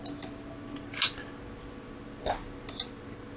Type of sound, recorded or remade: recorded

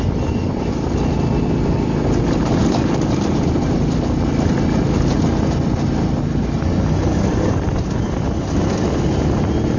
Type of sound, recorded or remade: recorded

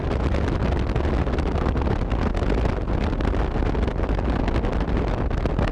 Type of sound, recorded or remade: recorded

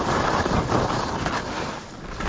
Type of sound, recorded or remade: recorded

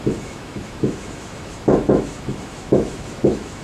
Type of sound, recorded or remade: remade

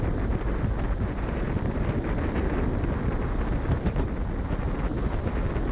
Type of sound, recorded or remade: recorded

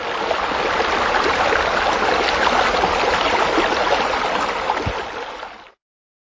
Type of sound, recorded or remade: recorded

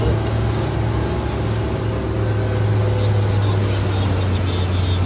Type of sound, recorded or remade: recorded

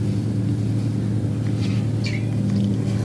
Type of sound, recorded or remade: recorded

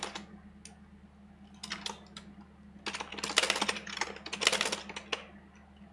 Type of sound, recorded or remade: recorded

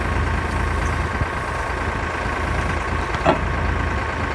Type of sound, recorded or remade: recorded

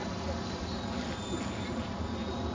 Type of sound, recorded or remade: recorded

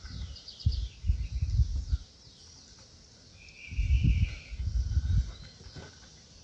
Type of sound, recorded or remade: recorded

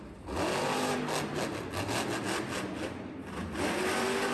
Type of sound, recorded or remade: recorded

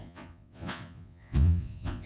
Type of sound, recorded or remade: remade